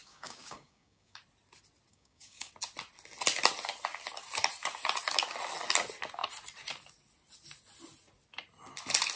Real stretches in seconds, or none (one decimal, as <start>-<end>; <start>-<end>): 1.2-1.9; 2.5-9.2